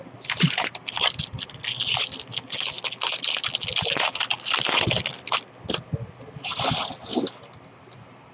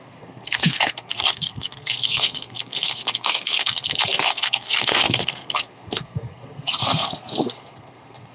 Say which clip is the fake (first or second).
second